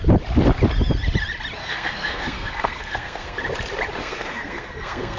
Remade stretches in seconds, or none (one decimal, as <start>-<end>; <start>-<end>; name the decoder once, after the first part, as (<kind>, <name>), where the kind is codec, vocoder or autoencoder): 1.6-3.4 (codec, SNAC); 4.0-5.2